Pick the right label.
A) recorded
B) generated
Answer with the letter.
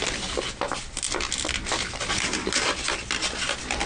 A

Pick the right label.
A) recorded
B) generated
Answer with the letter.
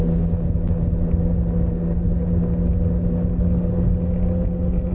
A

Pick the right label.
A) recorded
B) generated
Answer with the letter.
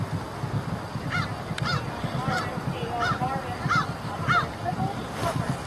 A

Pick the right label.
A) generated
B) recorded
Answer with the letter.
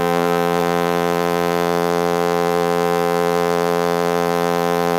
A